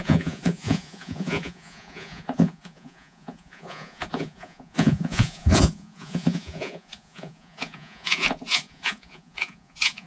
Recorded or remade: remade